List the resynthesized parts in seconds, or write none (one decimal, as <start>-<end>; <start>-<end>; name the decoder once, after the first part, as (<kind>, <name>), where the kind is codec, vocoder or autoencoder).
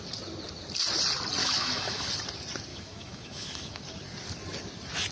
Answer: 1.4-2.1 (autoencoder, DAC-VAE); 2.7-3.8